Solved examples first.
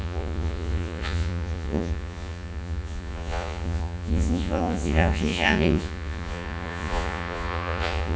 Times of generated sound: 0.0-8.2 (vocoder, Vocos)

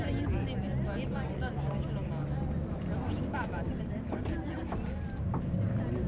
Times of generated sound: none

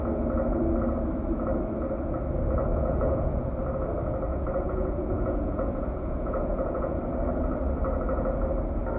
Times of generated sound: 2.7-3.5 (vocoder, Vocos); 4.3-7.0